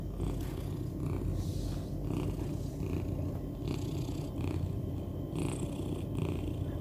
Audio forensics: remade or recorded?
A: recorded